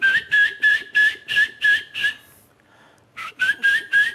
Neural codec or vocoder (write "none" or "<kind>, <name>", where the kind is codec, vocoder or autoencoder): vocoder, BigVGAN v2